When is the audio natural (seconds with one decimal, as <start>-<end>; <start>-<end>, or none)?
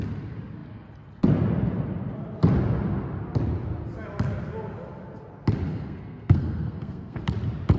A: 0.0-5.7; 7.2-7.8